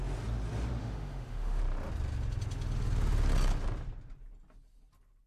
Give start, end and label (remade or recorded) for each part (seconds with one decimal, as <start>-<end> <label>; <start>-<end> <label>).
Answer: 0.0-0.8 recorded; 0.8-1.6 remade; 1.6-5.3 recorded